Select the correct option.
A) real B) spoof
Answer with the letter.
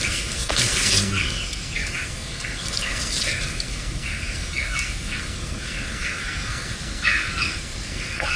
B